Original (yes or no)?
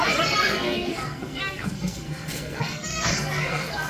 no